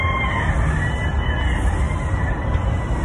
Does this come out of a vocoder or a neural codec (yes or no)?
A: no